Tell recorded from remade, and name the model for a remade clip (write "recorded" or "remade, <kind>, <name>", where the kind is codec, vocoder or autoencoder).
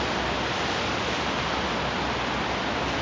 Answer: recorded